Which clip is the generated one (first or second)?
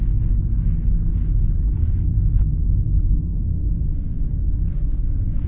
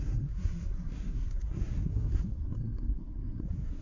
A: second